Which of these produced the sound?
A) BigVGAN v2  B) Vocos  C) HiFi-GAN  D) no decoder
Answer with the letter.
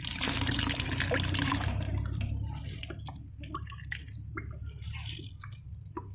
A